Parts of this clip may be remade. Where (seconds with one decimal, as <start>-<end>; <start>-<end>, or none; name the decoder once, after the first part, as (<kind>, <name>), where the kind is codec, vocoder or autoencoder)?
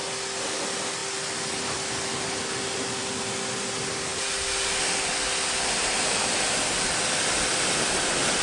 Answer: none